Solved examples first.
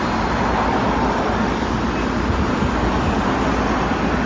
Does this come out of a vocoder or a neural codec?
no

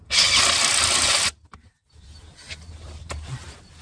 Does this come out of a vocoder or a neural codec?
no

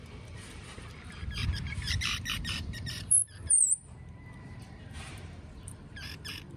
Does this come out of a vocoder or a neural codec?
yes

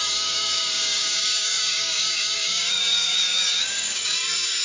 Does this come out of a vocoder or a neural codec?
yes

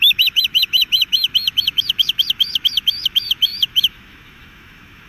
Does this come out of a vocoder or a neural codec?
yes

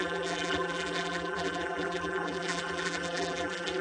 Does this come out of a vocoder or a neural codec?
yes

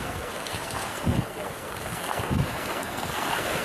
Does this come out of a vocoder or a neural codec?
yes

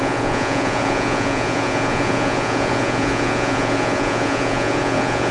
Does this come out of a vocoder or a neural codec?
yes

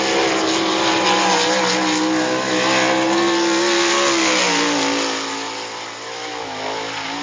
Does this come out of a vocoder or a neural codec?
no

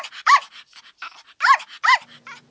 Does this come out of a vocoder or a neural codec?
no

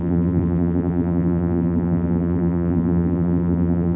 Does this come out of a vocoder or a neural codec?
yes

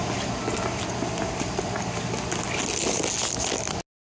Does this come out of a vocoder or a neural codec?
no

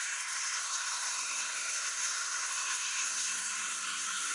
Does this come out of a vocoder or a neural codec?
yes